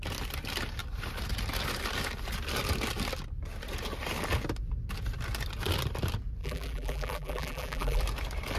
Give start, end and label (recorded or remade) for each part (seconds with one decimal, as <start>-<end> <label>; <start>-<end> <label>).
0.0-6.4 recorded; 6.4-8.0 remade; 8.0-8.6 recorded